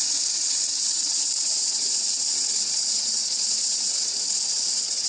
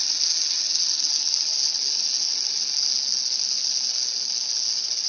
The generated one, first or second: first